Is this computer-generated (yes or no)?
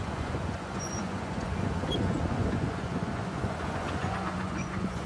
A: yes